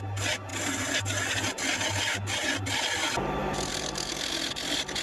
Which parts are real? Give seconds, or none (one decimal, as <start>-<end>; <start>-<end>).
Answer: 0.0-3.4; 4.3-5.0